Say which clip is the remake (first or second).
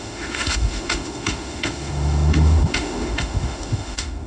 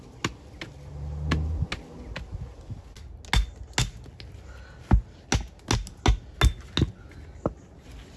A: first